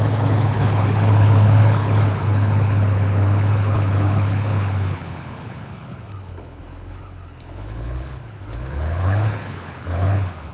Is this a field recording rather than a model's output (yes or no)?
no